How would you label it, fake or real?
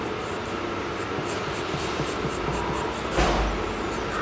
real